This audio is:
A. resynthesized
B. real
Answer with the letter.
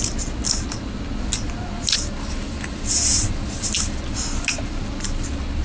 B